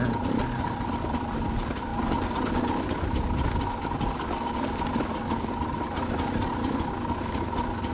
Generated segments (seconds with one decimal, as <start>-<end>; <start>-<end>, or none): none